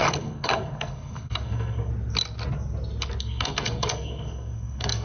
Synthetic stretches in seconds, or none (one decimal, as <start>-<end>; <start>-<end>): 0.0-1.9; 3.2-5.0